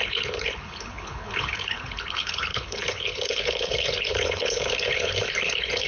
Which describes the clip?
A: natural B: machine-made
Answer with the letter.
B